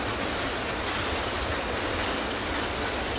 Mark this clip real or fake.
real